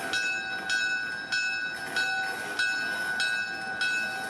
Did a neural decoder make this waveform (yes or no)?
no